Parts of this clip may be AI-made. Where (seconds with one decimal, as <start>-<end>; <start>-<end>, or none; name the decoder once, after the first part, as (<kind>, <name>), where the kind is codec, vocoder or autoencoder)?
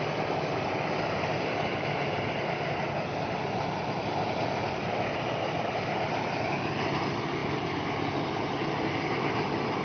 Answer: none